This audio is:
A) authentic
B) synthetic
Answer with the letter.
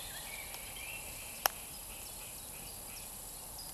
A